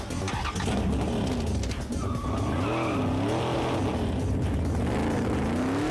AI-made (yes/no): no